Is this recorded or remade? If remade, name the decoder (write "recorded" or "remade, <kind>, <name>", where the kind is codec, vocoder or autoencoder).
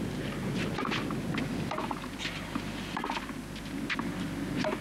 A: recorded